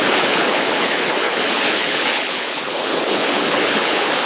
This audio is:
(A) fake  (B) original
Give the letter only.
A